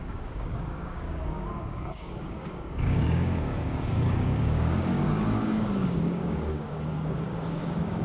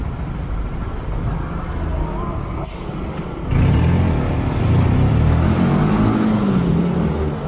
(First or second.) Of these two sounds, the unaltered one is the second